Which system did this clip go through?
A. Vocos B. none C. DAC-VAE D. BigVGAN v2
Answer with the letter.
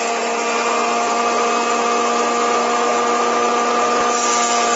B